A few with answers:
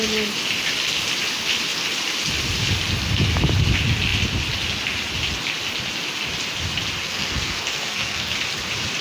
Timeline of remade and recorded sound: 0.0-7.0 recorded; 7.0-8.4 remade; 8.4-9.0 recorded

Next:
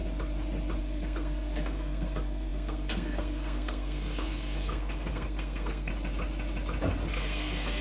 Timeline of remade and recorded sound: 0.0-0.8 recorded; 0.8-5.9 remade; 5.9-7.1 recorded; 7.1-7.8 remade

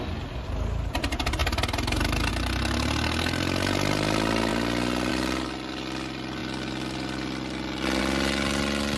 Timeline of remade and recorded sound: 0.0-9.0 recorded

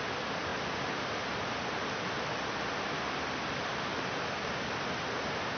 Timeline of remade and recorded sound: 0.0-5.6 recorded

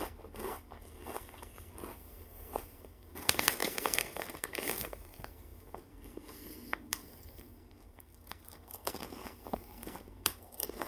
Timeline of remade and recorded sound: 0.0-10.9 remade